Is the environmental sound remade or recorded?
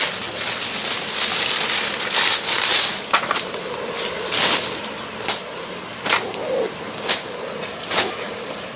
recorded